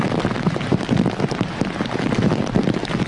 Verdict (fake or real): real